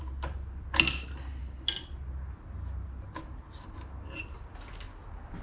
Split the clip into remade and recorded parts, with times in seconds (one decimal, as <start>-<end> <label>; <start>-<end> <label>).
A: 0.0-5.4 recorded